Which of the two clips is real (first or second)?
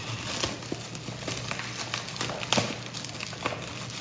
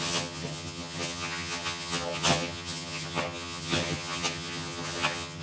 first